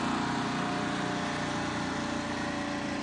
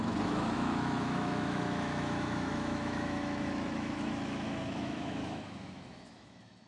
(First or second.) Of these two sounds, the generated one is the second